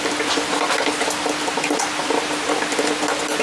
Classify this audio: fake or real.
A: real